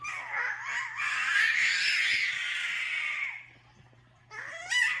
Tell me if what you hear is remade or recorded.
recorded